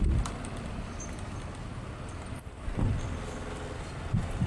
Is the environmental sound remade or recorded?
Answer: recorded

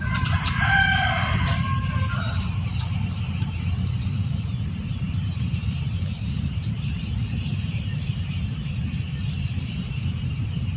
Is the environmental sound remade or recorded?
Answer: remade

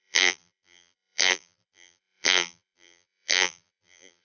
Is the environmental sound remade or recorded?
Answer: remade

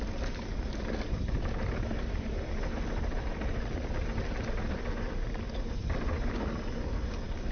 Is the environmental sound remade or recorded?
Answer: recorded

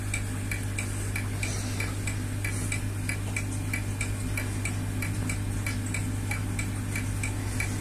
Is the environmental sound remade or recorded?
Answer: recorded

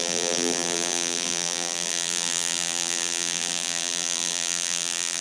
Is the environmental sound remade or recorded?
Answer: remade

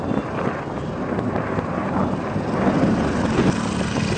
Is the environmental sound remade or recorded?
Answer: recorded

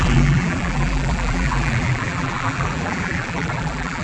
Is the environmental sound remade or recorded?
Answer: remade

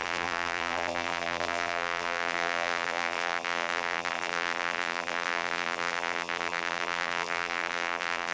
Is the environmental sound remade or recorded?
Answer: remade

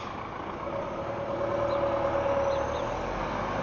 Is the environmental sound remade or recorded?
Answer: recorded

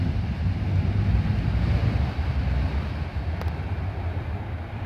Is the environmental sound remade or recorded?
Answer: recorded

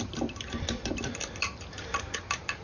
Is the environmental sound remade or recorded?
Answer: recorded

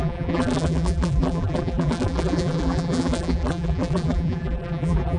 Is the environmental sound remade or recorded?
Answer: remade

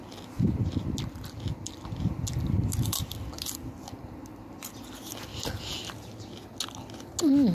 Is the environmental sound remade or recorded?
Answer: recorded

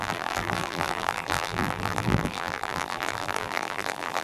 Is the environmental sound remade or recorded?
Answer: remade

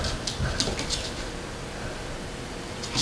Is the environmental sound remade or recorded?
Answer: recorded